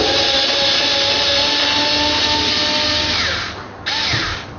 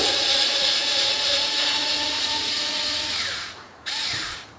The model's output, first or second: second